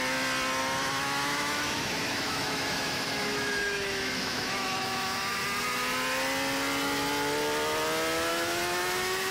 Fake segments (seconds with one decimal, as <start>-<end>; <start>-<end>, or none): 0.6-5.4; 8.3-9.3